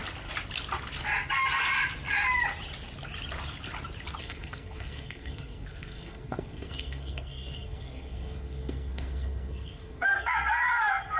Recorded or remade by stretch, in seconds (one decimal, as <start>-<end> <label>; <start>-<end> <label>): 0.0-4.2 recorded; 4.2-11.2 remade